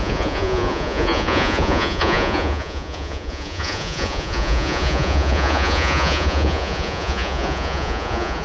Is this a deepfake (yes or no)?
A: yes